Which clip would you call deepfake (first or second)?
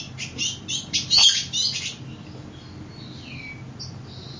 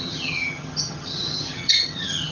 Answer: second